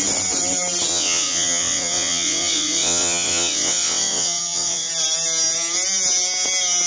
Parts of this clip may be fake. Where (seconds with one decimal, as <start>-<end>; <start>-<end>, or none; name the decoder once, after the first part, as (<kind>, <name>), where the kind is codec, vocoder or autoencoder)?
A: 0.9-4.9 (vocoder, WaveNeXt)